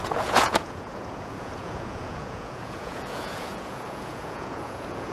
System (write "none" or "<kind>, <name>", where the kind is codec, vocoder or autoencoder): vocoder, Vocos